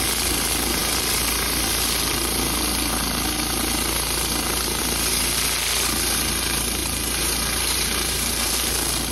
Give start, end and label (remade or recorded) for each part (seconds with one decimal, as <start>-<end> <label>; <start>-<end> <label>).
0.0-6.8 recorded; 6.8-8.7 remade; 8.7-9.1 recorded